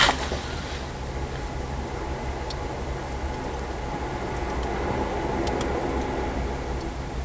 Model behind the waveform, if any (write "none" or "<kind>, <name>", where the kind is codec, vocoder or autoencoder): none